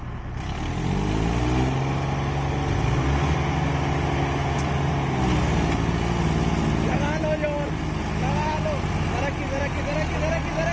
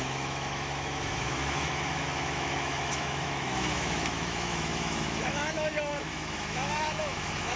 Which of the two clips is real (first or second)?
first